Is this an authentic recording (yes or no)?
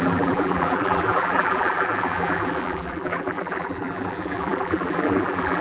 no